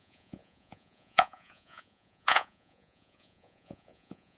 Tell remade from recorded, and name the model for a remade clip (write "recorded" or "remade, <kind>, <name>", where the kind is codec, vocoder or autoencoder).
remade, vocoder, Vocos